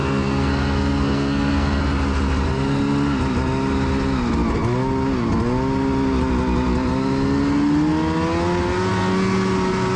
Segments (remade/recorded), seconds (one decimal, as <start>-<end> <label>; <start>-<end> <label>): 0.0-1.8 remade; 1.8-10.0 recorded